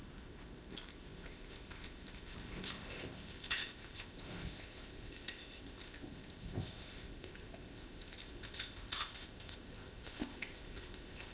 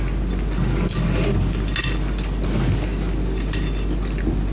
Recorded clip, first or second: second